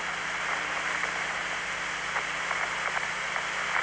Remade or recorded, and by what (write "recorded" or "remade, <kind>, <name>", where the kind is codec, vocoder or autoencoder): recorded